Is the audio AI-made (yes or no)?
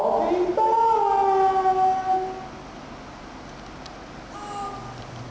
no